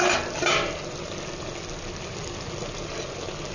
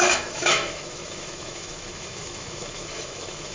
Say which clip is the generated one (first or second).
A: second